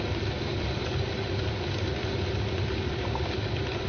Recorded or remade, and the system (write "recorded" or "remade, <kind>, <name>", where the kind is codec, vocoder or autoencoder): recorded